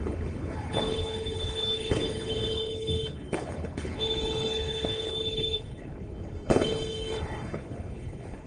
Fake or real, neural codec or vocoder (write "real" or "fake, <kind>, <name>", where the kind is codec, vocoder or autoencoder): fake, codec, HILCodec